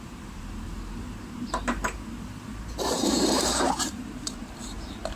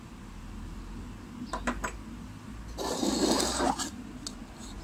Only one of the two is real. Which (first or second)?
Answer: second